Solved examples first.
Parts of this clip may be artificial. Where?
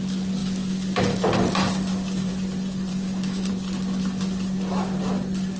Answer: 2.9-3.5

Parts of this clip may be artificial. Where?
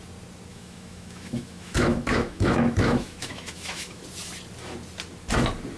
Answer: 0.5-4.0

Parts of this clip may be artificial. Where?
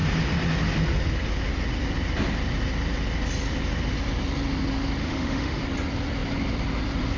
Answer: 5.0-5.6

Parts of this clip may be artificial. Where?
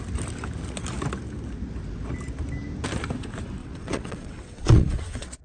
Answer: 3.6-5.4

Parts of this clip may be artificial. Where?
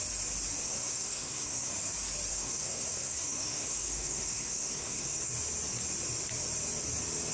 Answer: 0.6-1.7; 2.3-5.3